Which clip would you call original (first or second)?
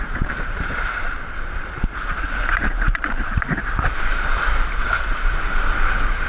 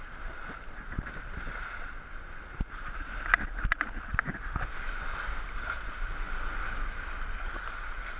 second